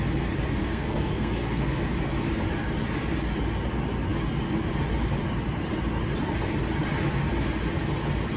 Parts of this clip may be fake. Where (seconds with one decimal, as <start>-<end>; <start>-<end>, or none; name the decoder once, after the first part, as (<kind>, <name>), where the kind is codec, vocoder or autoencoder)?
0.6-1.8 (codec, SNAC)